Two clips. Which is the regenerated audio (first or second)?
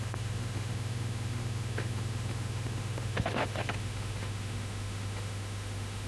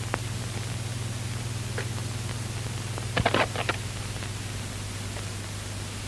first